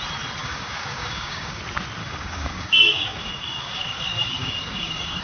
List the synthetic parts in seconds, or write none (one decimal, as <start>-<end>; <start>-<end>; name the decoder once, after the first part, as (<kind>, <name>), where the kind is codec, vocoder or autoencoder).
0.4-1.6 (codec, DAC); 2.0-5.2

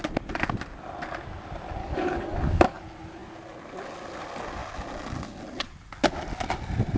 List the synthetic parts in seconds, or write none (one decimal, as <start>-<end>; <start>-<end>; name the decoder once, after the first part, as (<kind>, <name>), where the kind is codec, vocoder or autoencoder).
1.8-2.8 (codec, DAC)

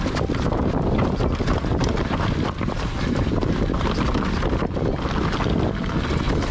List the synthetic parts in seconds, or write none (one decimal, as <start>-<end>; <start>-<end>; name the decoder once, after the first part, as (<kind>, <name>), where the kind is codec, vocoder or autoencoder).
none

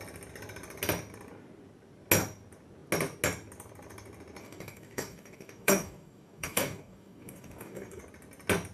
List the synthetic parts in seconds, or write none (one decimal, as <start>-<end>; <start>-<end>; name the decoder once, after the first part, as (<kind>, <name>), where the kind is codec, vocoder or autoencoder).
4.4-8.0 (codec, DAC)